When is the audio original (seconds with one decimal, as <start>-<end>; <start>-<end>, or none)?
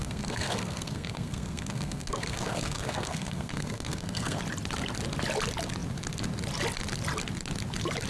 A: 4.4-8.1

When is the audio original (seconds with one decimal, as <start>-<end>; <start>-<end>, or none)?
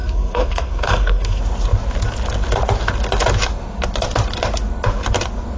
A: 1.4-5.6